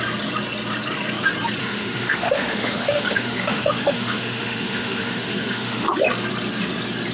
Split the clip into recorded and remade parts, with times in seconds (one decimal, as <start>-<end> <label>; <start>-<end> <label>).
0.0-1.6 recorded; 1.6-5.9 remade; 5.9-7.1 recorded